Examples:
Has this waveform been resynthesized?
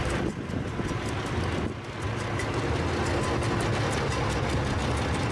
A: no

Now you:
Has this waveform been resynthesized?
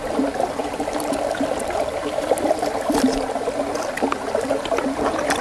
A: yes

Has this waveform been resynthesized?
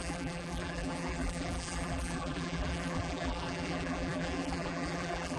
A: yes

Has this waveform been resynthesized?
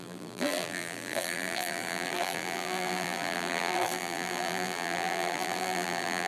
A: yes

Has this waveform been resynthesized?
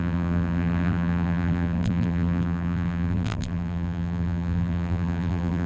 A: yes